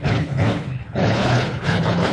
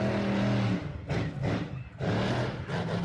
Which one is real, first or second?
second